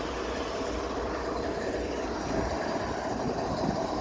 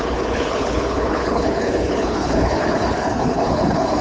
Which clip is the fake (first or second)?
second